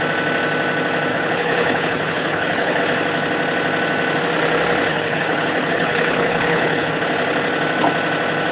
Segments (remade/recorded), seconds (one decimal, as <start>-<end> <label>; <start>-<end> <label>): 0.0-1.1 recorded; 1.1-2.8 remade; 2.8-4.9 recorded; 4.9-6.9 remade; 6.9-8.5 recorded